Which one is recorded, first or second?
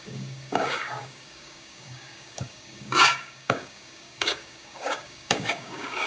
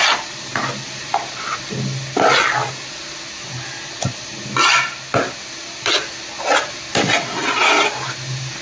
second